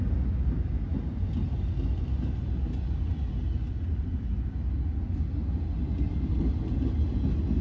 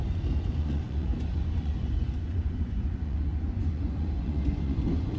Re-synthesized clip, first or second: second